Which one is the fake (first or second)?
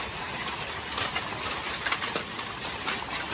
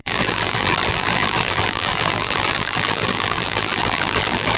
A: second